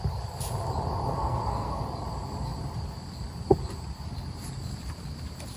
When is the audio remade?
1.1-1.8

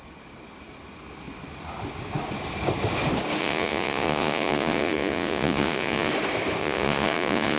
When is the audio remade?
3.4-6.1; 6.6-7.6